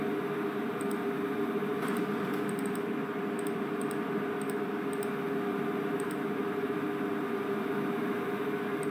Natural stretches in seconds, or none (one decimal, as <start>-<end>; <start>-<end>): 0.0-8.9